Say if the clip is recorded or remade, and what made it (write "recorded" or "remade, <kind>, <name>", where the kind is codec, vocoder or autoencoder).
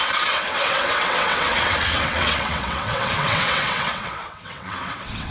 remade, vocoder, WaveNeXt